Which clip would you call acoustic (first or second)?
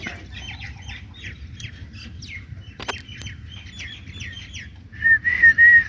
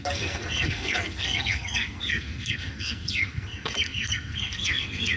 first